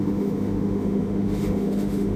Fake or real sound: fake